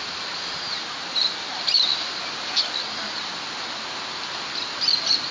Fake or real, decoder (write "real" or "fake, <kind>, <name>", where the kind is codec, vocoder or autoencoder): real